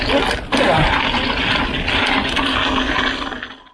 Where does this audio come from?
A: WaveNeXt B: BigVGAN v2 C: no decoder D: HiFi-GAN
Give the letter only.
C